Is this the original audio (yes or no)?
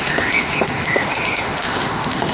no